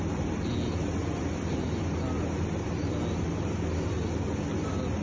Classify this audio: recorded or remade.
recorded